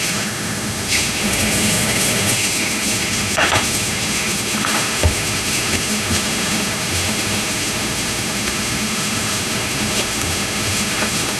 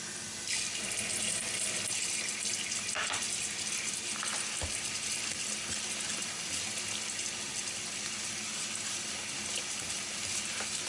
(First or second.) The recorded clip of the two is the second